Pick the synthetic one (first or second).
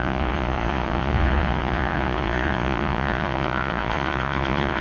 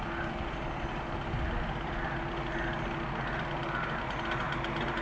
first